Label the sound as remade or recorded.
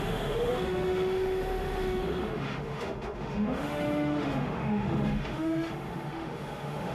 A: remade